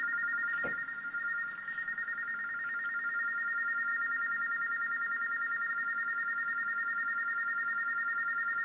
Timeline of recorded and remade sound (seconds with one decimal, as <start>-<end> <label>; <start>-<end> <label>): 0.0-8.6 recorded